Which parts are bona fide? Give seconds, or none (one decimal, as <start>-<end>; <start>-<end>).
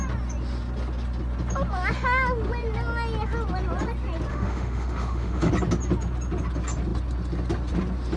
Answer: 0.0-4.3; 5.5-8.2